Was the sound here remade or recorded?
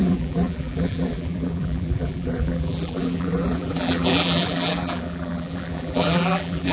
remade